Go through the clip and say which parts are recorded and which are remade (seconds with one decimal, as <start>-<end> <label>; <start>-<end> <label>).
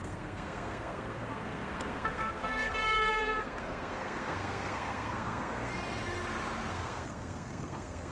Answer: 0.0-5.7 remade; 5.7-6.7 recorded; 6.7-8.1 remade